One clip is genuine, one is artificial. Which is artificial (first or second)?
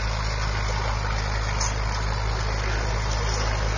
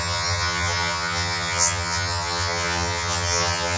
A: second